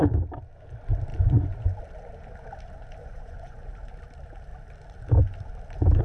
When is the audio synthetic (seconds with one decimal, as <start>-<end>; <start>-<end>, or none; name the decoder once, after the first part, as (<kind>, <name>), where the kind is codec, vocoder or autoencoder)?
3.0-3.7 (vocoder, Vocos)